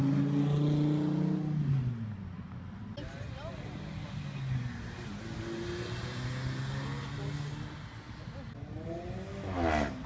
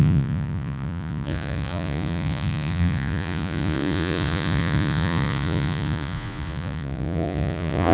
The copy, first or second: second